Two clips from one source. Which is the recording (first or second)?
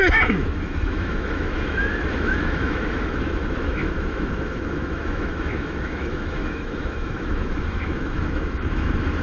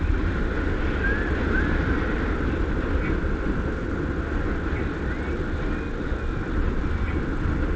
second